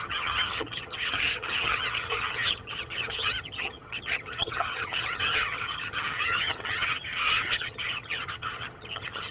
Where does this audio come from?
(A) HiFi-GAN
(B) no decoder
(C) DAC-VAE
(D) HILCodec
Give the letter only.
A